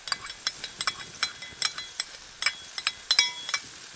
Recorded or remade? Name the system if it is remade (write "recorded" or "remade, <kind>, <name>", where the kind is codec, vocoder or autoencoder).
recorded